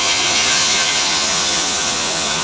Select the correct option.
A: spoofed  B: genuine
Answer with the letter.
A